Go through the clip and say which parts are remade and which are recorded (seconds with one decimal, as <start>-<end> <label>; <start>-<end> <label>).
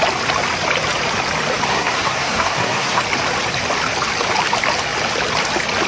0.0-1.7 recorded; 1.7-3.0 remade; 3.0-5.9 recorded